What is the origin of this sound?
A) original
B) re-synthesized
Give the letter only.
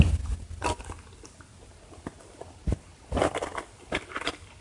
A